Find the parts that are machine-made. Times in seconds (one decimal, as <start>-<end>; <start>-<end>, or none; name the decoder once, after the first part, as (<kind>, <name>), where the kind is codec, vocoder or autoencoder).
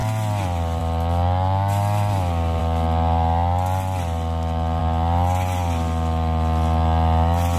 none